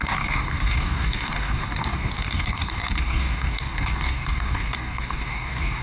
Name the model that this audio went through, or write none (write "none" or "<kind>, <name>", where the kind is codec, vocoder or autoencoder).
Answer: codec, DAC